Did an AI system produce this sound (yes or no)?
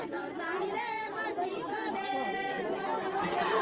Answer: no